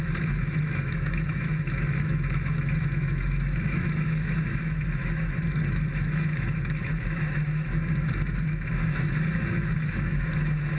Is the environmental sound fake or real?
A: fake